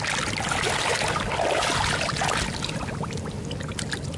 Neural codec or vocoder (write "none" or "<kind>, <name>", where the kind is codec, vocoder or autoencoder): none